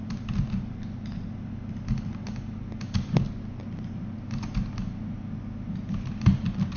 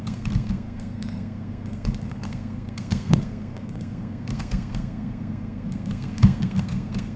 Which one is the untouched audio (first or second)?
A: first